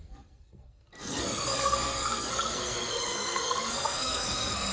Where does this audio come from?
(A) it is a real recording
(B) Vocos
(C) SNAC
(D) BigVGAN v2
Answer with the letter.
C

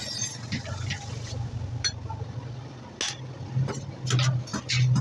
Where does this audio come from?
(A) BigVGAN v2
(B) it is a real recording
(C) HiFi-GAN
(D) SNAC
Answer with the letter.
B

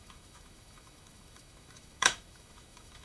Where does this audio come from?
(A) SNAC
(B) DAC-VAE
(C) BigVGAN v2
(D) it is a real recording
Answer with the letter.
B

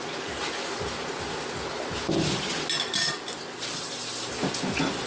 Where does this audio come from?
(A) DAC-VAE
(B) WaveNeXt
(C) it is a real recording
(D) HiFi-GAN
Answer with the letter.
C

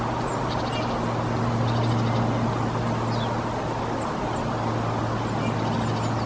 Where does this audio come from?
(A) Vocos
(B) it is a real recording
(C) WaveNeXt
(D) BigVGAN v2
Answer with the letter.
B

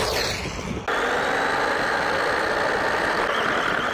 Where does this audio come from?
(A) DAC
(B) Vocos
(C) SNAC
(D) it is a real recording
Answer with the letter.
D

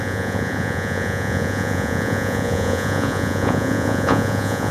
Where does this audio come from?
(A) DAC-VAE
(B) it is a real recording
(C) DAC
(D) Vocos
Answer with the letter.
D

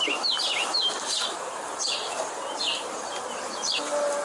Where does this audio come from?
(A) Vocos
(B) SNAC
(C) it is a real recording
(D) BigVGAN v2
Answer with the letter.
C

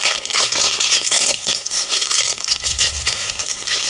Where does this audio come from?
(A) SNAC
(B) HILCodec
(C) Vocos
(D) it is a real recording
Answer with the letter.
A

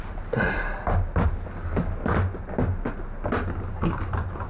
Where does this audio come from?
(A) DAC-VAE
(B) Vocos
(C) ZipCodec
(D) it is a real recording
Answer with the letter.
D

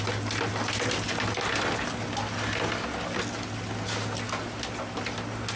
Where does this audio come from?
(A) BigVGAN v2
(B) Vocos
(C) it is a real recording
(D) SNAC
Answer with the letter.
C